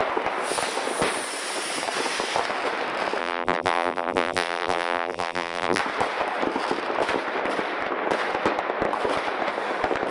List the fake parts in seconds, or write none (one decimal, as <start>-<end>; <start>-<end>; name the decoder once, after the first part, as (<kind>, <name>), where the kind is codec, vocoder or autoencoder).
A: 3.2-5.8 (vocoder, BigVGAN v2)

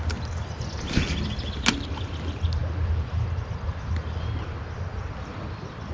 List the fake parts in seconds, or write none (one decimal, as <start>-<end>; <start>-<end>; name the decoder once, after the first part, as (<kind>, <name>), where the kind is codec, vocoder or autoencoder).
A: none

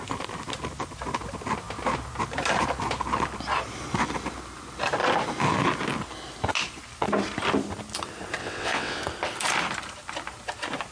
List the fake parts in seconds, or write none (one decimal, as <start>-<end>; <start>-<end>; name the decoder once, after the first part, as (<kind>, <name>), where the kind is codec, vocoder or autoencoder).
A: 8.4-9.0 (vocoder, WaveNeXt)

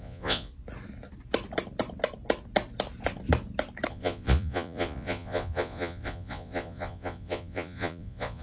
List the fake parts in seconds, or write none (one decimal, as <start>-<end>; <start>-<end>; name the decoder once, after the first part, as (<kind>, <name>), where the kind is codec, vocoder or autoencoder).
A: 0.0-0.5 (vocoder, Vocos); 3.9-8.4

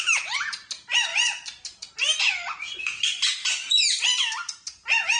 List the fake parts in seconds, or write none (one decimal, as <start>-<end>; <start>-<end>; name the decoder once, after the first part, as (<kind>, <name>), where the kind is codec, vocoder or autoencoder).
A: none